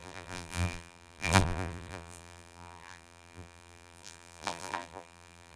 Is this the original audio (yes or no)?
no